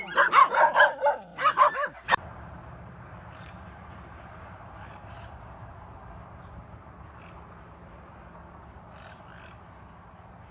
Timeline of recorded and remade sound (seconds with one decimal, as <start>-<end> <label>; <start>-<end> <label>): 0.0-1.3 recorded; 1.3-5.3 remade; 5.3-10.5 recorded